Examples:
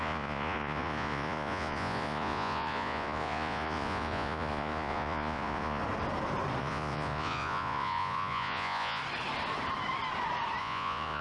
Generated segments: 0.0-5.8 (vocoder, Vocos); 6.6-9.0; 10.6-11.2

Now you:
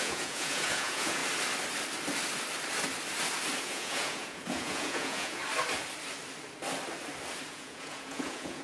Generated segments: 0.0-1.2 (vocoder, Vocos); 3.6-5.4; 7.5-8.6

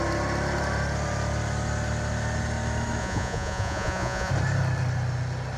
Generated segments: 3.0-4.3 (vocoder, Vocos)

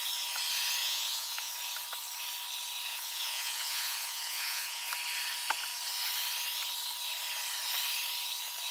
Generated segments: 0.8-1.5 (vocoder, Vocos); 2.9-4.9

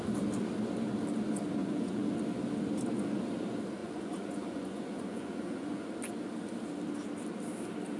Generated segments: 1.6-2.1 (vocoder, Vocos); 3.8-5.9

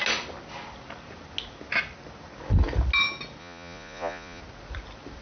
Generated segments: 3.4-4.4 (vocoder, Vocos)

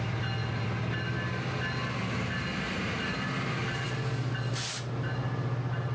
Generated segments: none